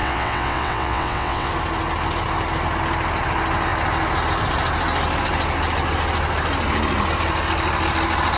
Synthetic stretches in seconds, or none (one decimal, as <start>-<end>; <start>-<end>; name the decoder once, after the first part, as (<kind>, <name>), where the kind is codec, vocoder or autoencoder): 0.0-1.5 (vocoder, WaveNeXt)